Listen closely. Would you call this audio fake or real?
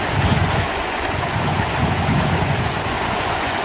fake